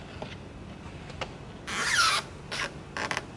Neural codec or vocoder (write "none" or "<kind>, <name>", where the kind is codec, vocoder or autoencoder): none